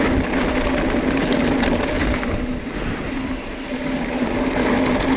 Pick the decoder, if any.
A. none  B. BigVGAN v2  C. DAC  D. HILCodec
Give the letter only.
B